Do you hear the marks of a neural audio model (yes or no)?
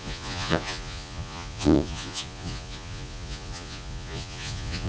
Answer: yes